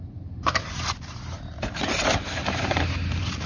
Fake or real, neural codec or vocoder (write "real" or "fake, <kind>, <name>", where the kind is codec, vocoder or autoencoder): fake, vocoder, BigVGAN v2